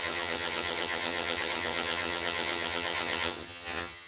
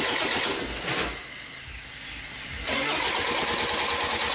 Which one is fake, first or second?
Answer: first